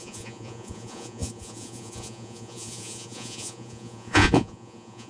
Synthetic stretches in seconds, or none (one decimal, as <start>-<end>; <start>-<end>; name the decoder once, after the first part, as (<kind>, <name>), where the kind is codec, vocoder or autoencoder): 0.0-5.1 (vocoder, Vocos)